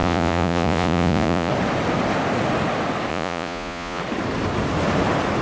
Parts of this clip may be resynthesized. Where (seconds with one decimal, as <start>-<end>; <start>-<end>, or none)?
0.0-1.5; 3.1-4.0